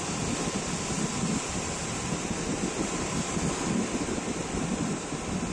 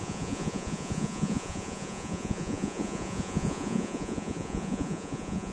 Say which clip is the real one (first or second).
first